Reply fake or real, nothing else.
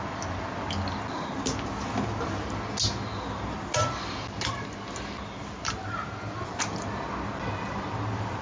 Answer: real